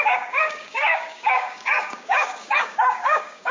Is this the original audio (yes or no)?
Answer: no